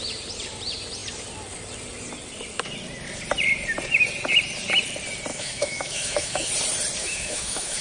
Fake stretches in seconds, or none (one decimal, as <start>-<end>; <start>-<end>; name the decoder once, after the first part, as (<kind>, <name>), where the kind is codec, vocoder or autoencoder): 5.3-6.5 (autoencoder, DAC-VAE); 7.0-7.8